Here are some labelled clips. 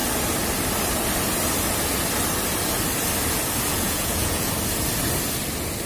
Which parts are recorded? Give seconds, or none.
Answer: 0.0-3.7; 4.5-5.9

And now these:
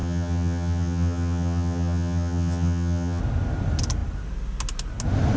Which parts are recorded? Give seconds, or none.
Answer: 3.2-5.4

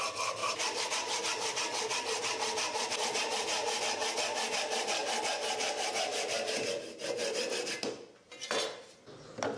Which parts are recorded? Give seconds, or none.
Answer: 0.0-0.4; 3.8-9.6

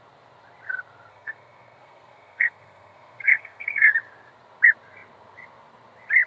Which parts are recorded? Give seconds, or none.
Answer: 0.0-1.1; 3.9-6.3